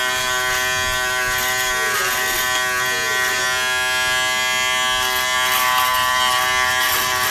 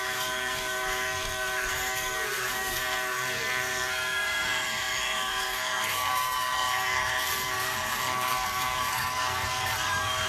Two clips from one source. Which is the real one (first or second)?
first